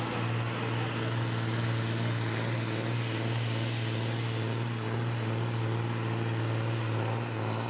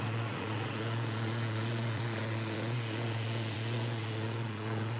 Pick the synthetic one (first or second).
second